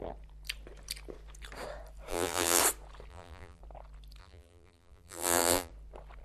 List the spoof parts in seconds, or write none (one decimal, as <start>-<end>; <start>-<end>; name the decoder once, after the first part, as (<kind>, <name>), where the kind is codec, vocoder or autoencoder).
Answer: 2.1-2.6 (vocoder, BigVGAN v2); 3.1-3.6; 4.2-5.7